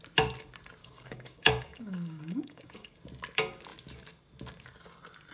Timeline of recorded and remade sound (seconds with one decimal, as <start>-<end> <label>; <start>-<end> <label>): 0.0-0.8 recorded; 0.8-3.0 remade; 3.0-5.3 recorded